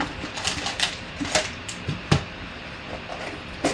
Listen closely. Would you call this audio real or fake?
real